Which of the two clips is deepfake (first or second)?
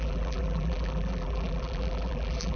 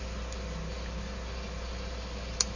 first